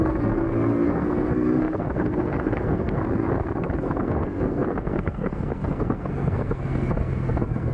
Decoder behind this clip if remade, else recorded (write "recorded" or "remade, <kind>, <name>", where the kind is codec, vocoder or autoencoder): remade, codec, SNAC